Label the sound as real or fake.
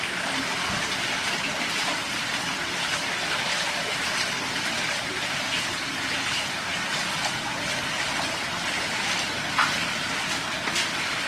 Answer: fake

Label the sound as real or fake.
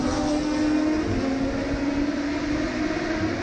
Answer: real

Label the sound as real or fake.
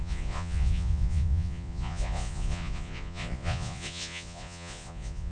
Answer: fake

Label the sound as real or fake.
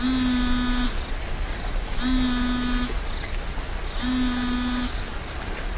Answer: real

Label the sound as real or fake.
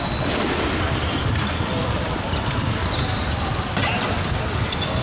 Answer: real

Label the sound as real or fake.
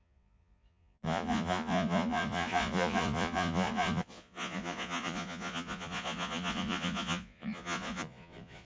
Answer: fake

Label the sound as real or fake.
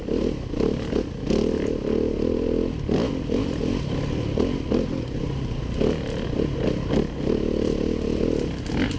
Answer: real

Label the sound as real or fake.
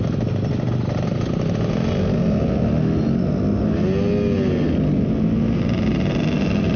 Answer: real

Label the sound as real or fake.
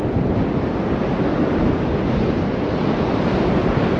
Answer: real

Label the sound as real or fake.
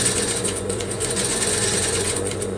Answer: fake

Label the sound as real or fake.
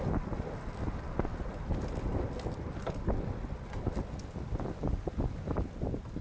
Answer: real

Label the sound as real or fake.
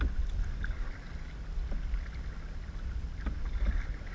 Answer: real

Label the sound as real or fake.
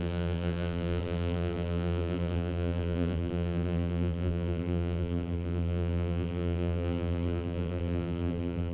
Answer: fake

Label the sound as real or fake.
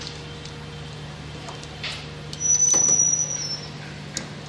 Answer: real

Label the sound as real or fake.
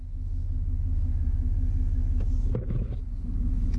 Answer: real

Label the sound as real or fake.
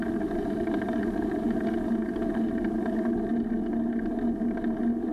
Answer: real